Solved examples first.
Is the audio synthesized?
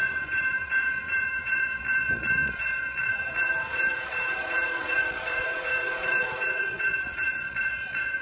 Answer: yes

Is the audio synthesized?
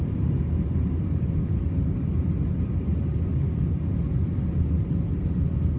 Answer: yes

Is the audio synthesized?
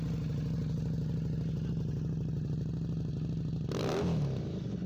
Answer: no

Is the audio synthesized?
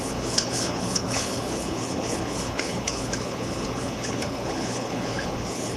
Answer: yes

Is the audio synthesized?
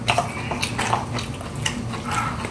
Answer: no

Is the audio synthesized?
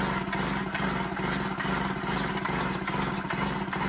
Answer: no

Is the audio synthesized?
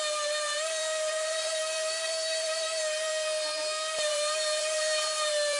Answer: yes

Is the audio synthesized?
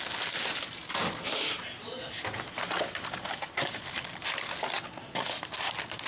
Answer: no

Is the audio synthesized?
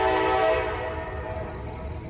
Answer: no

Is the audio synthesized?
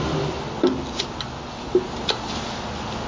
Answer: no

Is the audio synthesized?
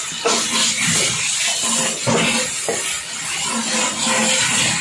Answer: no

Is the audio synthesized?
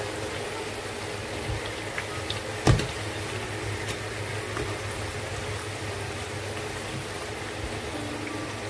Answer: no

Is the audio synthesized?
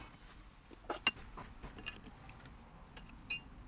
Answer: no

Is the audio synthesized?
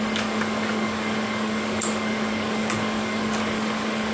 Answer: yes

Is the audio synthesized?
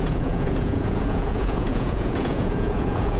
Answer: yes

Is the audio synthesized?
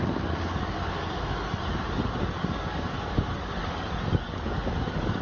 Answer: yes